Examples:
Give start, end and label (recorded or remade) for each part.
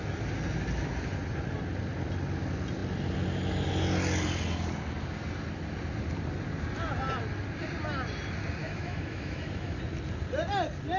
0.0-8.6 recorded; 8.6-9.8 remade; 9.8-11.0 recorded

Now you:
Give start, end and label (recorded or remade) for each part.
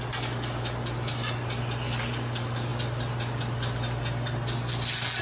0.0-5.2 recorded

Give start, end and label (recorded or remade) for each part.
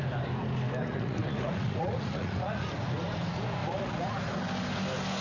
0.0-0.8 recorded; 0.8-2.7 remade; 2.7-3.6 recorded; 3.6-4.4 remade; 4.4-5.2 recorded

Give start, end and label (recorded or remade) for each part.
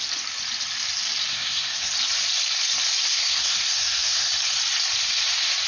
0.0-1.3 recorded; 1.3-1.9 remade; 1.9-3.1 recorded; 3.1-4.3 remade; 4.3-5.7 recorded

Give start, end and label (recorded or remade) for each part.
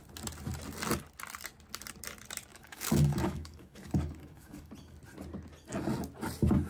0.0-2.5 recorded; 2.5-4.7 remade; 4.7-6.7 recorded